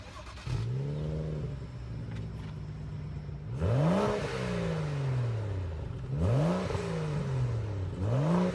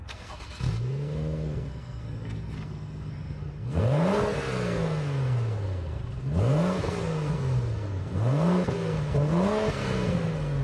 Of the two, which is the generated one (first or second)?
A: second